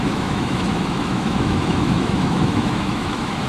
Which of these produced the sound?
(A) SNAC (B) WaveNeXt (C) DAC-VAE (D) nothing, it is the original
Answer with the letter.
C